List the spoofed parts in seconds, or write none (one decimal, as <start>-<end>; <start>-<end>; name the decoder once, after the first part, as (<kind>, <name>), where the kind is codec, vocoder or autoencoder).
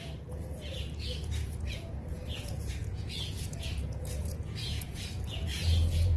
0.0-6.2 (vocoder, Vocos)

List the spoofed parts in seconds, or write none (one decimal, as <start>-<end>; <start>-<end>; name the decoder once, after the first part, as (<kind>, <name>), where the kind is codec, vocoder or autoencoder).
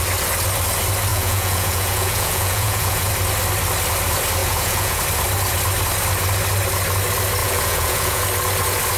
1.1-3.1 (vocoder, Vocos); 4.4-5.0; 7.4-8.2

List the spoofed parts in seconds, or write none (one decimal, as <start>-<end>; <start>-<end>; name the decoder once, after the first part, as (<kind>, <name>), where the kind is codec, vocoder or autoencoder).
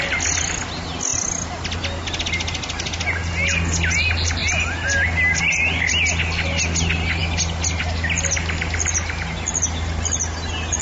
none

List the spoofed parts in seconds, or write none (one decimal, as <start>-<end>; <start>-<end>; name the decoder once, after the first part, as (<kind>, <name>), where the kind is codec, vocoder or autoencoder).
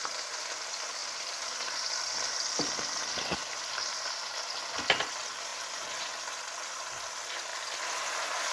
none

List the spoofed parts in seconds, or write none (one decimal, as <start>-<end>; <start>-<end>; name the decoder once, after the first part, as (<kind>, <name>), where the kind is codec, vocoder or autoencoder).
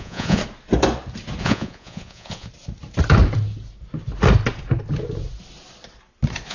0.0-0.4 (vocoder, Vocos); 1.4-2.5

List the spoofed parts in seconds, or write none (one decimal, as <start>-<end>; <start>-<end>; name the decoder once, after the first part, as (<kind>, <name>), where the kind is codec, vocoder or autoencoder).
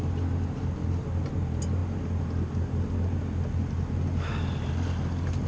none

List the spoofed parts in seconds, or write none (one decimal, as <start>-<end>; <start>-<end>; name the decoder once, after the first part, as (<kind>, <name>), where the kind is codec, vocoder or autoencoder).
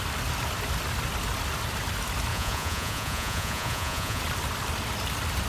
2.3-4.2 (vocoder, Vocos)